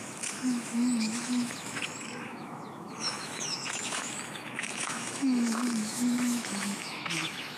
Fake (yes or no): yes